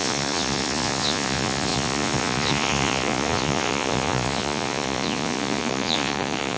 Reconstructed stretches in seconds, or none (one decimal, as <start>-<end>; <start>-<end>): 0.0-6.6